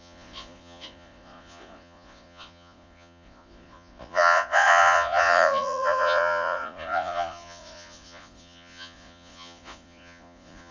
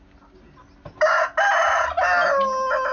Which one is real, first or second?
second